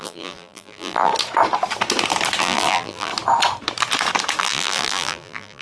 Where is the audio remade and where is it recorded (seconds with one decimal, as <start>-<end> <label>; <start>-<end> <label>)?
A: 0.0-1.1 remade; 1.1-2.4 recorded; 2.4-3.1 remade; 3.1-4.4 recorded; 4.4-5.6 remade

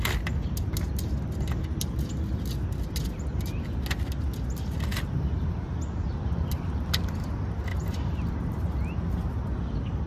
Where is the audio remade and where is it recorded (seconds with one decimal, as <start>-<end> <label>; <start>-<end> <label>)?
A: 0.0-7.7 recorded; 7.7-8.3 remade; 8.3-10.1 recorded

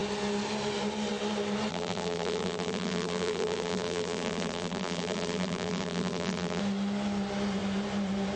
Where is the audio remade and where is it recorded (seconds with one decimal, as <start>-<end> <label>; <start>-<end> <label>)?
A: 0.0-1.7 recorded; 1.7-6.6 remade; 6.6-8.4 recorded

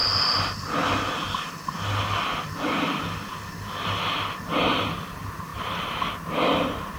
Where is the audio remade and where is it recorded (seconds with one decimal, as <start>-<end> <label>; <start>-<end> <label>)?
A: 0.0-0.7 remade; 0.7-7.0 recorded